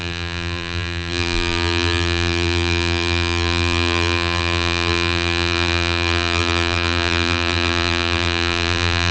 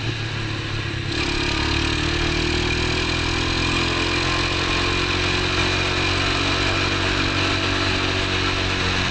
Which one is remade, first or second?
first